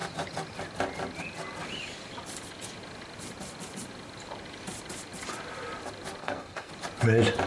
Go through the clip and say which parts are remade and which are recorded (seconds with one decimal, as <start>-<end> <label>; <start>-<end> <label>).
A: 0.0-6.2 recorded; 6.2-6.7 remade; 6.7-7.5 recorded